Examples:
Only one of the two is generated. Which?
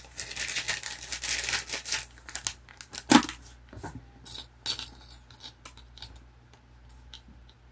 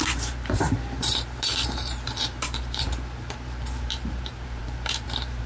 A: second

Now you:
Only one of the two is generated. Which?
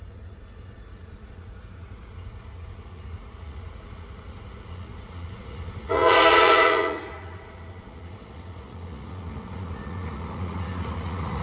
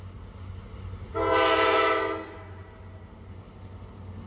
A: first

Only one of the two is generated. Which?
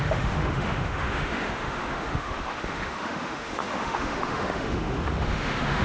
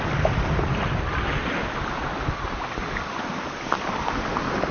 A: first